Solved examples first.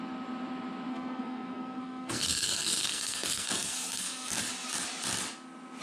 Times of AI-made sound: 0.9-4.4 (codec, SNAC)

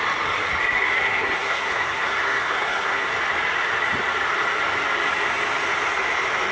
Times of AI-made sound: 0.9-3.1 (codec, SNAC)

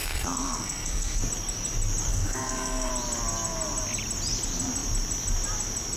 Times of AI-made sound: 0.0-1.2 (codec, SNAC); 2.1-2.9